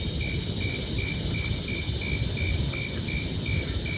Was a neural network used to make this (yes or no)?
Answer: no